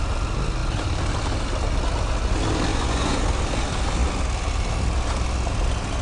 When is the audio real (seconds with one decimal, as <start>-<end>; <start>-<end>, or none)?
0.0-2.7; 3.2-6.0